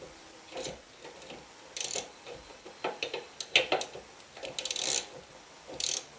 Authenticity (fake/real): real